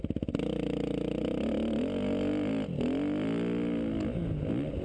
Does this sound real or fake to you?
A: real